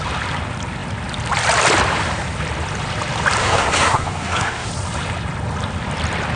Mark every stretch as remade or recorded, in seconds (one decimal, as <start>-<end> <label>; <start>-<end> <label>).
0.0-3.4 recorded; 3.4-4.7 remade; 4.7-6.4 recorded